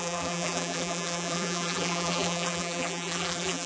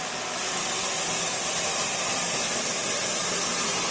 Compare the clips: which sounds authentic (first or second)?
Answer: second